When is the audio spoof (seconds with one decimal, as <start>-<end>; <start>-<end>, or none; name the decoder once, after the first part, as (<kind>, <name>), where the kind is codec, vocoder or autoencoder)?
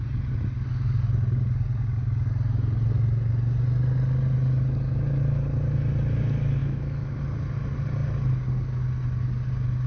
6.6-7.2 (autoencoder, DAC-VAE)